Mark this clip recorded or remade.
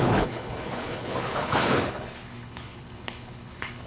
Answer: remade